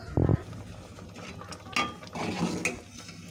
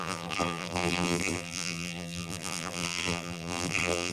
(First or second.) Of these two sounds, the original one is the first